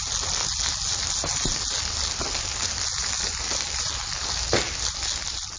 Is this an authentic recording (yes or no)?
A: yes